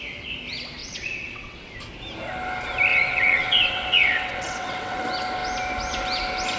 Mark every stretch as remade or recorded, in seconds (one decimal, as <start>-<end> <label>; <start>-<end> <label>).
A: 0.0-0.8 recorded; 0.8-1.7 remade; 1.7-2.9 recorded; 2.9-5.0 remade; 5.0-6.6 recorded